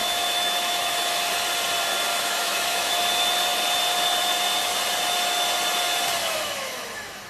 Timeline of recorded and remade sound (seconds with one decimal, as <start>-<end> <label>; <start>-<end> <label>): 0.0-1.2 remade; 1.2-2.1 recorded; 2.1-2.9 remade; 2.9-6.2 recorded; 6.2-7.3 remade

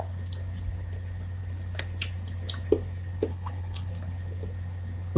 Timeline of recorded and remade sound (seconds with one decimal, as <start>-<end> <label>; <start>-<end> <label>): 0.0-3.3 recorded; 3.3-3.9 remade; 3.9-5.2 recorded